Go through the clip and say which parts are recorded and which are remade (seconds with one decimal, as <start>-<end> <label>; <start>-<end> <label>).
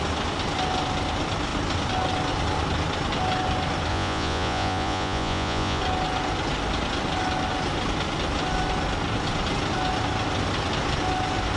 0.0-3.9 recorded; 3.9-5.8 remade; 5.8-11.6 recorded